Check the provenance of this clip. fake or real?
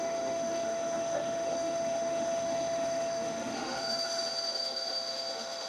fake